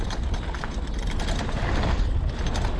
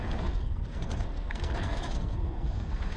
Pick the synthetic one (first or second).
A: second